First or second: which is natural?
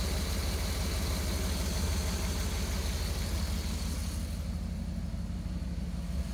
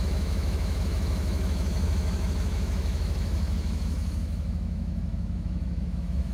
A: first